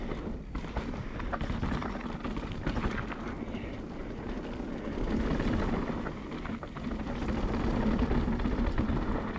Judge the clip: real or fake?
real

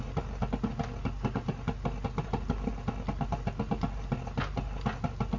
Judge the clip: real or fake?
real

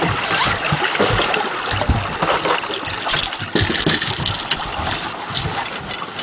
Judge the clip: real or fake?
real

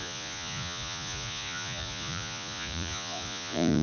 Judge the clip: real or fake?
fake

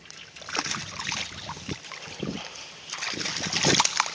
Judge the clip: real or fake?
real